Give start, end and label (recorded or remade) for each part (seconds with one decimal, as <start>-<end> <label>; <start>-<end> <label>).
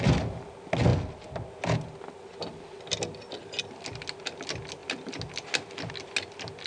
0.0-6.7 recorded